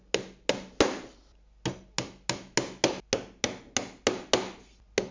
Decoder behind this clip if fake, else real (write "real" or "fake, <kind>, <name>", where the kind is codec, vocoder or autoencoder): real